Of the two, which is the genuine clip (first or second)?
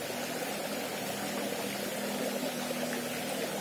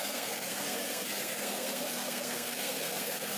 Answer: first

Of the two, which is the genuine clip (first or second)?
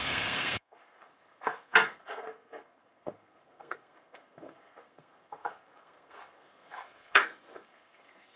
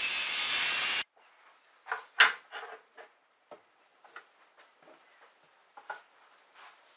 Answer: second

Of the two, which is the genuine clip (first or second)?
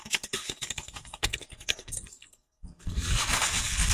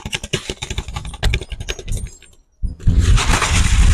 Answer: second